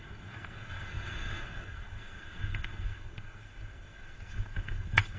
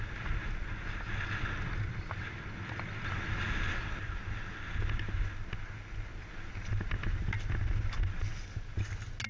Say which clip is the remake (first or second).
first